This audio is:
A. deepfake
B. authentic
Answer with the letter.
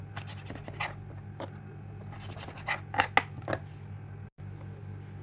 B